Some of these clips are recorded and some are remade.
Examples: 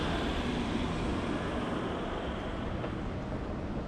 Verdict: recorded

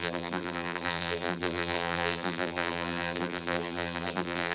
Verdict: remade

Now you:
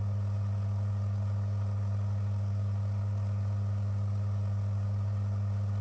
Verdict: recorded